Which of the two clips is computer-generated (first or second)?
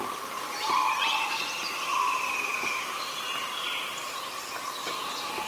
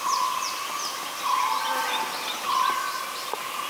first